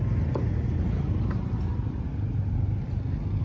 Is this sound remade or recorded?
recorded